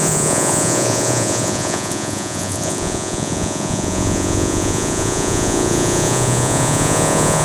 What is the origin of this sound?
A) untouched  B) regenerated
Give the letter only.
B